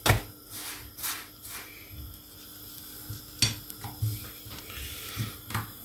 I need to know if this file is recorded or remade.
recorded